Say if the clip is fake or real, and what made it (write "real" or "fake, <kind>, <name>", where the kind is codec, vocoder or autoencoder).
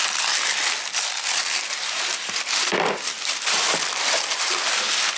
real